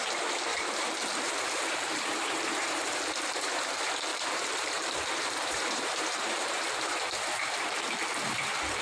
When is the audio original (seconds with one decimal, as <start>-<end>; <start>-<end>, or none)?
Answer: 0.0-0.5; 3.0-4.1; 6.7-8.8